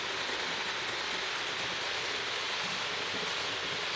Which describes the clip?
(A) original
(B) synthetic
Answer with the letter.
A